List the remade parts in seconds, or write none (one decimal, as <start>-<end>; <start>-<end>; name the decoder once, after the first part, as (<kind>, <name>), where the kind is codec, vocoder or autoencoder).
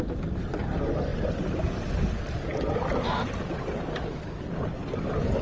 none